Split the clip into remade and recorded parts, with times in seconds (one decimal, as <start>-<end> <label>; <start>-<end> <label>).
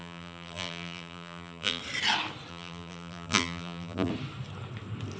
0.0-1.8 remade; 1.8-2.5 recorded; 2.5-4.1 remade; 4.1-5.2 recorded